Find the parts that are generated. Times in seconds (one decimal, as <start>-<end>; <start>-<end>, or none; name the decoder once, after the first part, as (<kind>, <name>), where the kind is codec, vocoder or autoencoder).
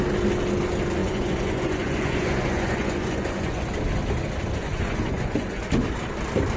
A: 1.0-3.7 (vocoder, Vocos); 4.6-5.6